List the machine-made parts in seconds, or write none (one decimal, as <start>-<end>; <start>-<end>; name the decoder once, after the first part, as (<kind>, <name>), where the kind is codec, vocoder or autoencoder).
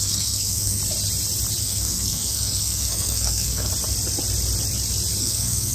0.0-0.8 (codec, SNAC); 1.6-3.7; 5.2-5.7